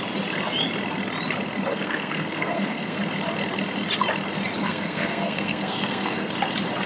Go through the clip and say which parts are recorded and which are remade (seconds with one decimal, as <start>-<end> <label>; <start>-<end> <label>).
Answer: 0.0-1.7 recorded; 1.7-3.0 remade; 3.0-4.6 recorded; 4.6-6.3 remade; 6.3-6.9 recorded